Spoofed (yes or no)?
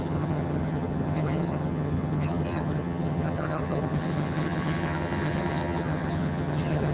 yes